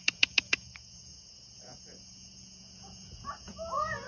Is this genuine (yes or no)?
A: no